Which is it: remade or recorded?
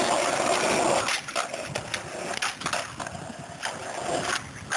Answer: recorded